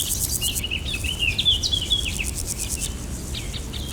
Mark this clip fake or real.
real